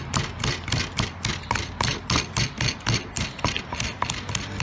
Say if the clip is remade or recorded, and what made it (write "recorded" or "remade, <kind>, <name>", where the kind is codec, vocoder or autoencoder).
recorded